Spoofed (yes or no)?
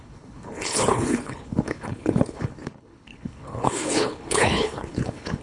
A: yes